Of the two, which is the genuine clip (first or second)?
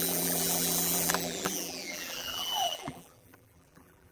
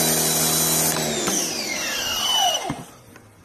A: second